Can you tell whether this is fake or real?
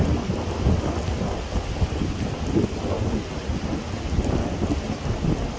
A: real